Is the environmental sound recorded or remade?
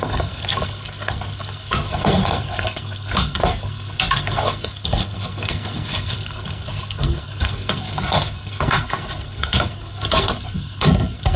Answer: remade